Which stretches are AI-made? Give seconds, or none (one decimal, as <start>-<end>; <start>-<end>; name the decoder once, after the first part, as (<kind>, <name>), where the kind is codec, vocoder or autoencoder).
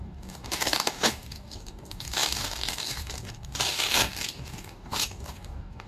0.0-5.9 (codec, DAC)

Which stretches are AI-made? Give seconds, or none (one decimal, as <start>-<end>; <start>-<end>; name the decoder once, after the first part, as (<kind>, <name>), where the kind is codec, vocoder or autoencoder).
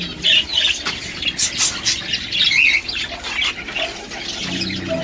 none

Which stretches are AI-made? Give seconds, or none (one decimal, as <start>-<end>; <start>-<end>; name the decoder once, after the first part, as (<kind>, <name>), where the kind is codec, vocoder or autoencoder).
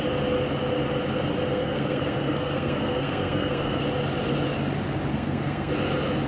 1.5-3.8 (codec, SNAC); 5.1-5.7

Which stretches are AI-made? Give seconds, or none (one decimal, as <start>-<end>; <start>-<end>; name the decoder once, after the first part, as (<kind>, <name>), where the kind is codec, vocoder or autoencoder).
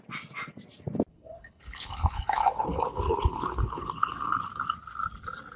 1.1-4.5 (codec, HILCodec)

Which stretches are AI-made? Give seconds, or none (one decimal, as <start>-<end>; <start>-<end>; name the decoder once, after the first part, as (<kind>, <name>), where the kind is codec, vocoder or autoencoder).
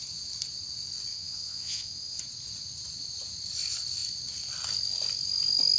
1.1-2.2 (vocoder, WaveNeXt)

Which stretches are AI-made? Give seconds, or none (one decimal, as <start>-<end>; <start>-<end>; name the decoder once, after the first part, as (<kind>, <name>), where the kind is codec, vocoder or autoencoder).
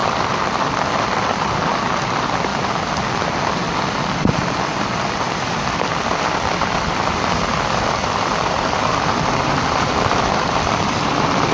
0.0-2.5 (vocoder, BigVGAN v2); 5.7-11.5